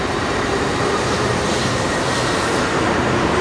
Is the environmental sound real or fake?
fake